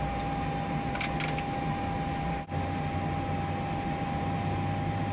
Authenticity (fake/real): real